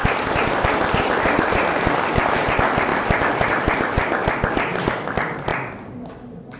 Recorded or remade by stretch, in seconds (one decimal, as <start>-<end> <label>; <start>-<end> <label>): 0.0-1.5 remade; 1.5-2.9 recorded; 2.9-3.5 remade; 3.5-6.6 recorded